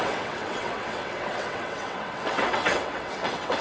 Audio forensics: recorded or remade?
remade